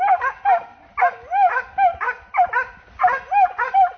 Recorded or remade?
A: recorded